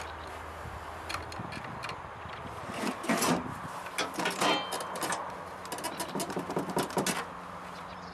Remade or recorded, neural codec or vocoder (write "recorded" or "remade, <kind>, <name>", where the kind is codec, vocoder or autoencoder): recorded